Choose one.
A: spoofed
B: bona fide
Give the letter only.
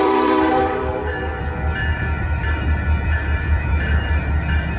A